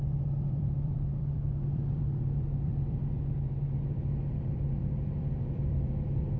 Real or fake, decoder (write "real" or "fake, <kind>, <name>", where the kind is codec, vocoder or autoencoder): fake, vocoder, BigVGAN v2